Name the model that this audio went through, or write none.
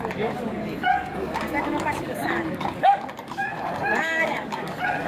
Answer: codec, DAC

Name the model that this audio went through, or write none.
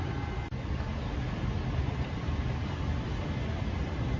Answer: none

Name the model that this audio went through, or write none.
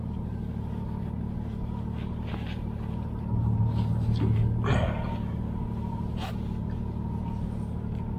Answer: none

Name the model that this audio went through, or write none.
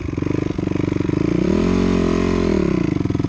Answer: none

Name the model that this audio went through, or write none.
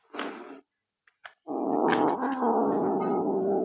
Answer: none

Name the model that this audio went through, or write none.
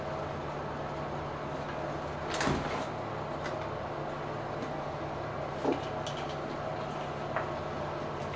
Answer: none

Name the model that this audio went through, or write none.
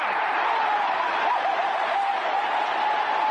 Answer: none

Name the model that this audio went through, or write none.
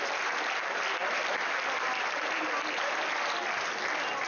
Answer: none